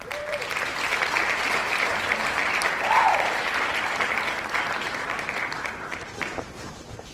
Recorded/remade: remade